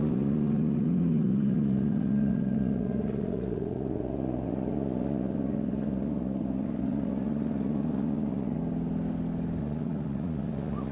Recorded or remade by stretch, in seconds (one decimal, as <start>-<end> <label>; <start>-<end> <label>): 0.0-8.6 remade; 8.6-9.6 recorded; 9.6-10.9 remade